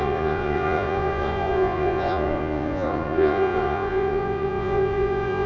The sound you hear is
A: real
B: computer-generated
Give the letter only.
B